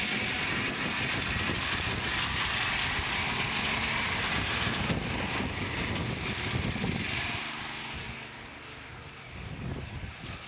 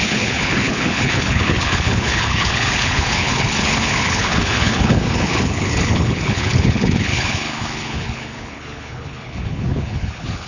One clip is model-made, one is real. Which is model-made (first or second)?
second